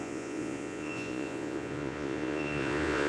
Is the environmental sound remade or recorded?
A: remade